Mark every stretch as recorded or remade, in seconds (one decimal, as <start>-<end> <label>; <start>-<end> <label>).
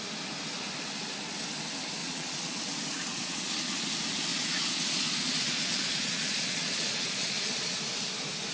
0.0-2.0 recorded; 2.0-2.6 remade; 2.6-3.1 recorded; 3.1-3.9 remade; 3.9-4.3 recorded; 4.3-7.8 remade; 7.8-8.5 recorded